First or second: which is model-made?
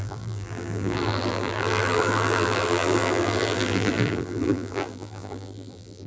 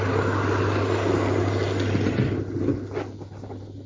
first